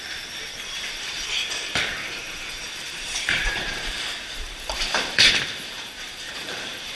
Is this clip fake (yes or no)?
yes